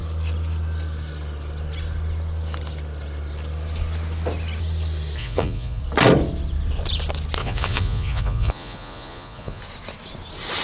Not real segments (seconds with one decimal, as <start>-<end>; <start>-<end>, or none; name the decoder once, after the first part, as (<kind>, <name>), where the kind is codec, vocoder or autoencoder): 5.2-5.8 (vocoder, Vocos); 7.4-9.6